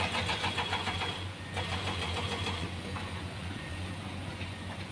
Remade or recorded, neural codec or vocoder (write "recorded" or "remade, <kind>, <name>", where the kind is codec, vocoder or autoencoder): remade, vocoder, Vocos